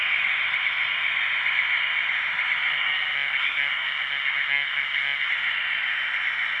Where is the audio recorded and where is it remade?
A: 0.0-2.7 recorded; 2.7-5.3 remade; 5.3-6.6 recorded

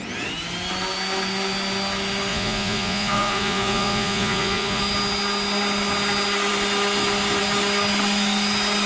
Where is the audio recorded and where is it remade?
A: 0.0-2.3 recorded; 2.3-4.8 remade; 4.8-8.9 recorded